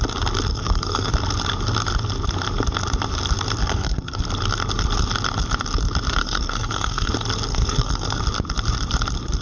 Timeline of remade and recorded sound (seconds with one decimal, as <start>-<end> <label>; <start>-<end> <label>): 0.0-0.5 recorded; 0.5-1.1 remade; 1.1-3.6 recorded; 3.6-4.2 remade; 4.2-6.2 recorded; 6.2-7.1 remade; 7.1-7.5 recorded; 7.5-8.2 remade; 8.2-9.4 recorded